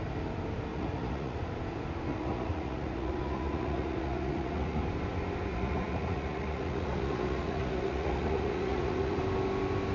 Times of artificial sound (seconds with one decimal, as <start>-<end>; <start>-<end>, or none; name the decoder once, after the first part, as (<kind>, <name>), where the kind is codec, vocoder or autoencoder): 0.7-1.4 (vocoder, Vocos); 2.1-4.8; 5.5-9.2